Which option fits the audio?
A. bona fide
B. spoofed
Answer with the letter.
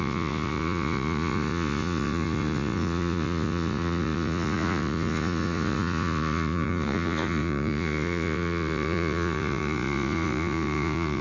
B